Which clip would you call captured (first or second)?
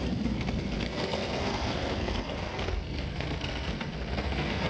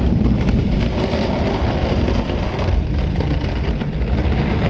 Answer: second